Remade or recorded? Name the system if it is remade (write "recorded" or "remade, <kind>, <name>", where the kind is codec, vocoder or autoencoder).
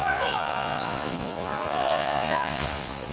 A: remade, vocoder, Vocos